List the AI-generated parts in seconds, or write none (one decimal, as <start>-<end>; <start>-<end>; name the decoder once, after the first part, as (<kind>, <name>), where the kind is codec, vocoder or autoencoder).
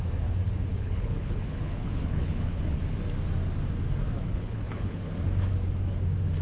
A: 0.7-2.8 (codec, HILCodec); 4.3-5.1